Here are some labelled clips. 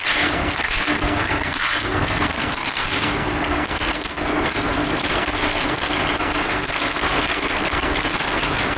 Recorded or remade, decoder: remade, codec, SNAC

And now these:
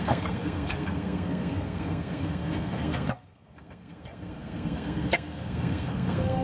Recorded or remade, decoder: remade, codec, SNAC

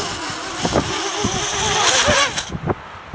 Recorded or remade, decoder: remade, vocoder, BigVGAN v2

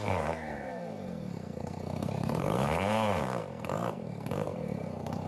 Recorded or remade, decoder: remade, codec, SNAC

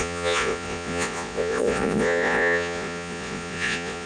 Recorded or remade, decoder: remade, vocoder, Vocos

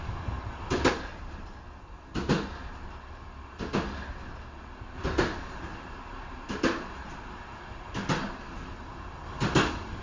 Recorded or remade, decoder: recorded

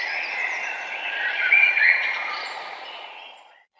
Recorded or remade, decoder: remade, vocoder, Vocos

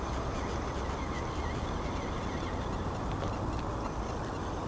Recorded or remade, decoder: recorded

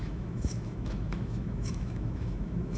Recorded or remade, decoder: remade, autoencoder, DAC-VAE